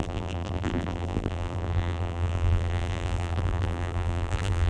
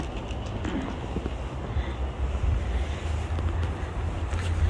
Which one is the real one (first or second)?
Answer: second